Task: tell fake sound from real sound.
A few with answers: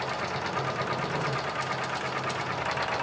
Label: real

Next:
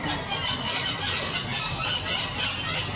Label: real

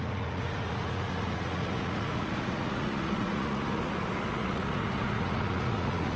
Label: fake